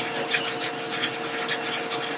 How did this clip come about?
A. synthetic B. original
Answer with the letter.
B